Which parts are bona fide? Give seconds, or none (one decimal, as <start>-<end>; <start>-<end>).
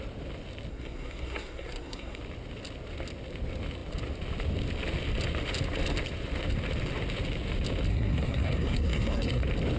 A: 0.0-0.7; 2.2-7.9; 9.4-9.8